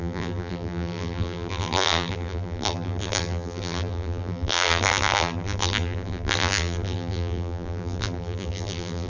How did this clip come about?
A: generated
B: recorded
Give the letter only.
A